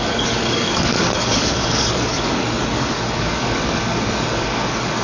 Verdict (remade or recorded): remade